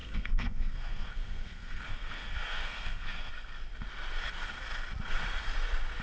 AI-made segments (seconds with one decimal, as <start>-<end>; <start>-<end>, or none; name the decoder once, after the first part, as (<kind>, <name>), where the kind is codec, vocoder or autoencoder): 0.0-3.3 (codec, SNAC)

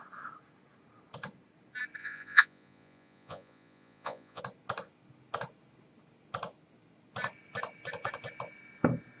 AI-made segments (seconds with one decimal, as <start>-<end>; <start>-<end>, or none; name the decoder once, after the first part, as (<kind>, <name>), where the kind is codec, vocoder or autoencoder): 2.0-4.4 (vocoder, Vocos)

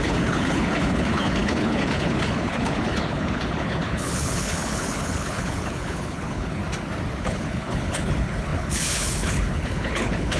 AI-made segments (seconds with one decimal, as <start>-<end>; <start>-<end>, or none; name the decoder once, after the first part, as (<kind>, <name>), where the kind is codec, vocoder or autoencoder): 0.0-6.6 (codec, HILCodec); 7.2-10.4

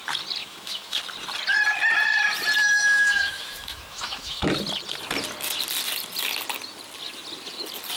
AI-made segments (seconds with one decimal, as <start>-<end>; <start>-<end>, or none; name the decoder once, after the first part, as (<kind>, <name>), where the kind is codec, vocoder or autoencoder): 0.4-1.0 (autoencoder, DAC-VAE); 2.6-4.5

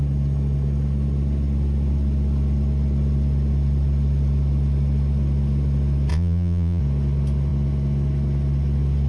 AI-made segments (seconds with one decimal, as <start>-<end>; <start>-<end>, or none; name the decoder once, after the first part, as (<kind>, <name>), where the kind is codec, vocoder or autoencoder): 6.1-6.8 (vocoder, Vocos)

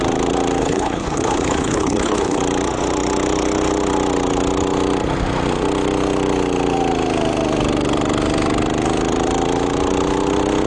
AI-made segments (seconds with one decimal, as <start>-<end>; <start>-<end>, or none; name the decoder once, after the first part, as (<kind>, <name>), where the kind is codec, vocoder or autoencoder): 0.6-2.4 (codec, HILCodec)

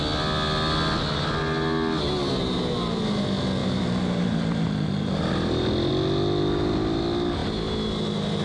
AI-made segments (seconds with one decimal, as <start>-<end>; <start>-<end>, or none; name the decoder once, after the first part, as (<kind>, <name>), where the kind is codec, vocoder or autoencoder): 3.6-5.9 (vocoder, BigVGAN v2)

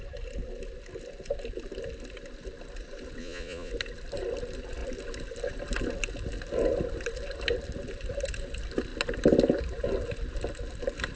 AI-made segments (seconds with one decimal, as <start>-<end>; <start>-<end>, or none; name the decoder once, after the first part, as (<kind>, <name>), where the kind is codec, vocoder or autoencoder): 3.2-3.7 (vocoder, Vocos)